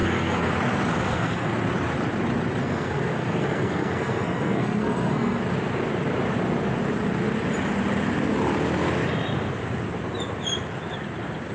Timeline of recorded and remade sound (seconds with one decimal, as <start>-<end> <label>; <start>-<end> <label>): 0.0-0.5 remade; 0.5-0.9 recorded; 0.9-1.5 remade; 1.5-2.6 recorded; 2.6-5.4 remade; 5.4-11.5 recorded

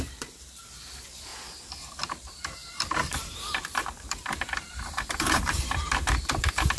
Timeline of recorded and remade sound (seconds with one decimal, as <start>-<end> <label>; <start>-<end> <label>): 0.0-1.3 remade; 1.3-2.0 recorded; 2.0-6.8 remade

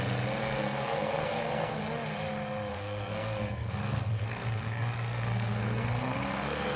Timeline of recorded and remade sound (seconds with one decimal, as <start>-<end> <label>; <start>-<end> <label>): 0.0-0.4 recorded; 0.4-1.8 remade; 1.8-2.7 recorded; 2.7-6.8 remade

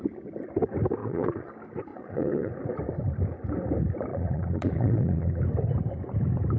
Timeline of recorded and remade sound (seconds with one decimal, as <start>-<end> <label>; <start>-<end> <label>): 0.0-1.0 recorded; 1.0-1.5 remade; 1.5-1.9 recorded; 1.9-2.5 remade; 2.5-4.1 recorded; 4.1-5.4 remade; 5.4-6.6 recorded

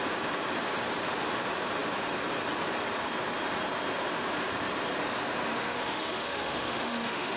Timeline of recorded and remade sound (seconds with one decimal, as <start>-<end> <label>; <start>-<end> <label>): 0.0-5.5 recorded; 5.5-7.4 remade

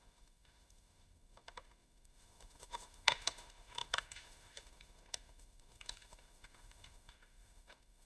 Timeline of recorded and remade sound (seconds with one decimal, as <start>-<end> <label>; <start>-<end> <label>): 0.0-8.1 remade